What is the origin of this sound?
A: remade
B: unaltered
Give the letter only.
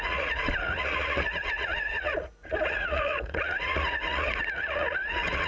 A